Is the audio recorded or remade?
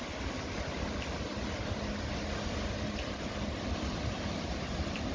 recorded